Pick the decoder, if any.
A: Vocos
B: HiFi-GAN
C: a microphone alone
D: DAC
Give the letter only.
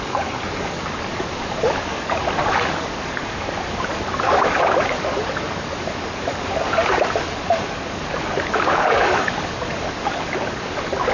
D